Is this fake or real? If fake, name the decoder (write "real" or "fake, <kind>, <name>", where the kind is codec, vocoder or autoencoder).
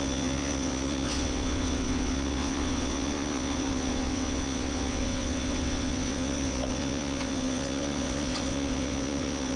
fake, vocoder, WaveNeXt